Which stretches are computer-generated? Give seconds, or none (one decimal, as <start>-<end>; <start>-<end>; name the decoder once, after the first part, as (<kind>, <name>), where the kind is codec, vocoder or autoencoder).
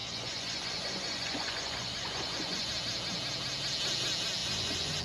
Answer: 0.0-2.7 (vocoder, Vocos); 4.4-5.0